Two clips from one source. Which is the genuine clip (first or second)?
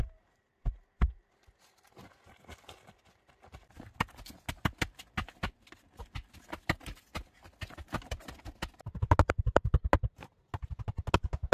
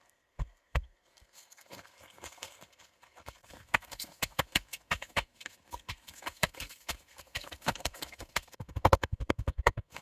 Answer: first